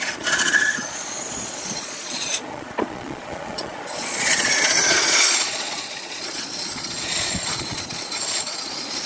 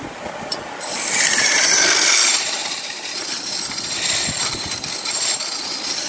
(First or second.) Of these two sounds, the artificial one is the first